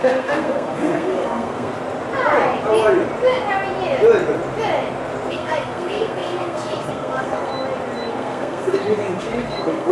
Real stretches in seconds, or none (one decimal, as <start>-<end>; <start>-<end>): 1.7-5.3; 7.5-8.1